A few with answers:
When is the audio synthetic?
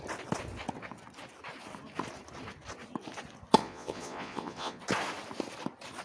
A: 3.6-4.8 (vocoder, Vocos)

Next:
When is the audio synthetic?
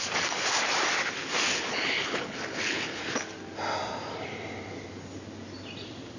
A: 1.5-3.0 (codec, HILCodec)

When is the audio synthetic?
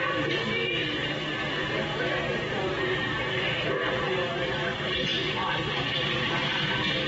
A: none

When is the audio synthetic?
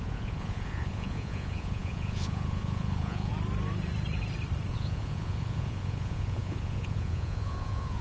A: 0.0-3.3 (vocoder, Vocos); 4.7-8.0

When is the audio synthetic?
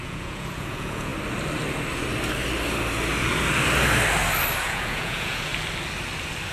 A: 0.0-1.1 (vocoder, Vocos); 4.6-5.5